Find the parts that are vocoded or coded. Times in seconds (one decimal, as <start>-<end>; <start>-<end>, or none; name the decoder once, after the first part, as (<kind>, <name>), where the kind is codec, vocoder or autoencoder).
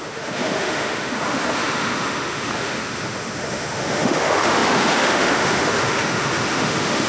0.0-7.1 (autoencoder, DAC-VAE)